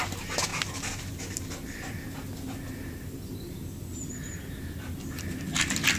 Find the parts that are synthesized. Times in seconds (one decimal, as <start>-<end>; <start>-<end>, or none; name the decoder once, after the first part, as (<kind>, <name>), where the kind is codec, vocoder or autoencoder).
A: none